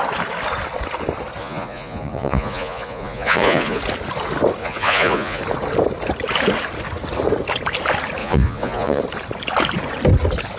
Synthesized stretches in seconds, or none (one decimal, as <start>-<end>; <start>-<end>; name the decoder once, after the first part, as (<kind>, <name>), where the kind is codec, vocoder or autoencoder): 1.4-3.8 (vocoder, Vocos); 4.6-5.4; 8.2-9.0